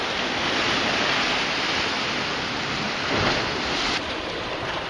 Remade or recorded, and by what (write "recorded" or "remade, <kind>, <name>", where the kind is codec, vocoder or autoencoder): recorded